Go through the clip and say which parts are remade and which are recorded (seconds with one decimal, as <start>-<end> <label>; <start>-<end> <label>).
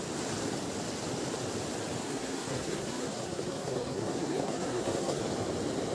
0.0-2.0 recorded; 2.0-5.2 remade; 5.2-5.9 recorded